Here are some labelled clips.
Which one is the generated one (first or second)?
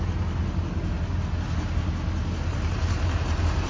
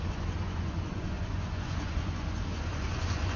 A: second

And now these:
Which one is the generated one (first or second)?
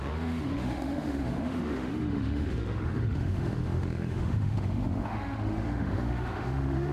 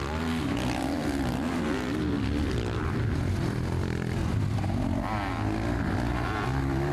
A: first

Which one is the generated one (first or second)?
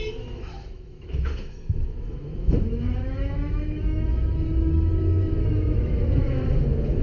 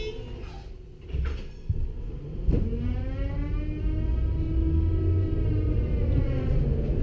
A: first